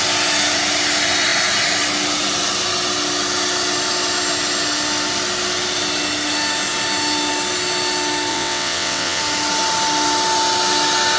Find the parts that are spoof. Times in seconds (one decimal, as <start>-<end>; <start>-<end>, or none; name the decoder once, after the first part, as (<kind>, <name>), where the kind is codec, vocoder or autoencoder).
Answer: 8.3-9.2 (vocoder, WaveNeXt)